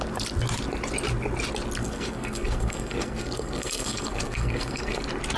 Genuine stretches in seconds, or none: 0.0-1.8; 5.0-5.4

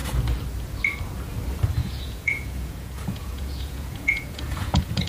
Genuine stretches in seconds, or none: 0.0-1.8

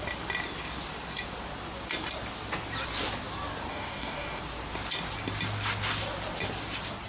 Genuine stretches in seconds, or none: 0.0-3.7; 4.4-7.1

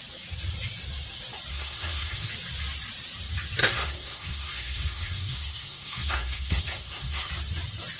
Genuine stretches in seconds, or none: 0.0-1.5; 2.3-3.6; 7.3-8.0

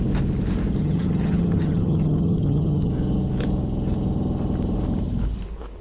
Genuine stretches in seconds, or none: 0.0-0.8; 2.9-5.8